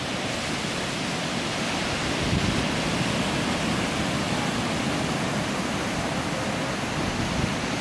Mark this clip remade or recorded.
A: recorded